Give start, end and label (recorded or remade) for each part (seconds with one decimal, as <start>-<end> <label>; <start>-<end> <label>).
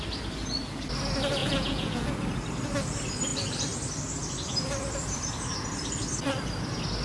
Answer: 0.0-1.4 recorded; 1.4-2.1 remade; 2.1-7.0 recorded